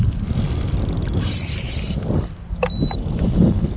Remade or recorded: recorded